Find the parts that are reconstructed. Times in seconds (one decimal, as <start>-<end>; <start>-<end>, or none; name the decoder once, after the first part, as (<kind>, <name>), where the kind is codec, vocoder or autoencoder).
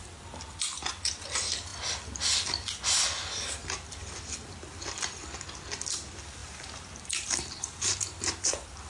6.4-8.9 (vocoder, BigVGAN v2)